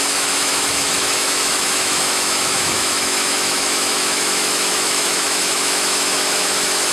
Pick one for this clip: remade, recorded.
remade